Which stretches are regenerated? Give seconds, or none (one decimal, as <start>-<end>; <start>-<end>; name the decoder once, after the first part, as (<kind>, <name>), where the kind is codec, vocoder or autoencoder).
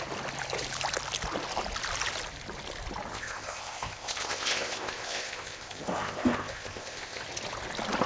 3.1-7.2 (codec, ZipCodec)